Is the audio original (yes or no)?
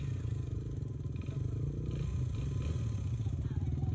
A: yes